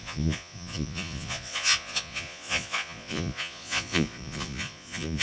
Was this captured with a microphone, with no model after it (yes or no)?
no